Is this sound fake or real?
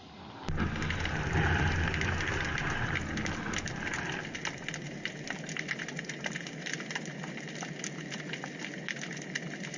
real